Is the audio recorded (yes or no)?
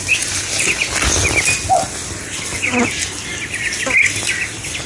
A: yes